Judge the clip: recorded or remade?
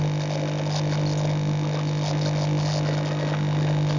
recorded